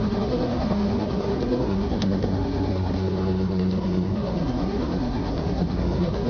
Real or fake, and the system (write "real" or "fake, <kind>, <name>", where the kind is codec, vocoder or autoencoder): fake, codec, SNAC